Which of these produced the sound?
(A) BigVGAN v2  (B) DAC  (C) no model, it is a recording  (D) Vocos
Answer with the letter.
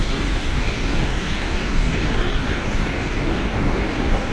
B